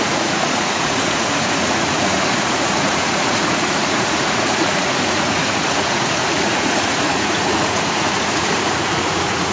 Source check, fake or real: fake